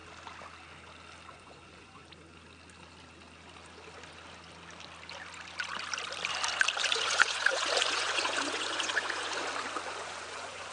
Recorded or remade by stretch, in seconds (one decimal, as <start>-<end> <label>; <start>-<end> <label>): 0.0-1.3 recorded; 1.3-2.0 remade; 2.0-6.8 recorded; 6.8-10.7 remade